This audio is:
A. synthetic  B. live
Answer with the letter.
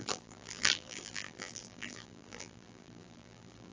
A